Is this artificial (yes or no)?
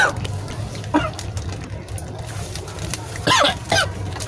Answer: no